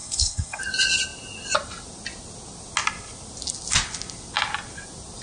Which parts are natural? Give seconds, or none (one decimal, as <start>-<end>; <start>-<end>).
0.6-5.2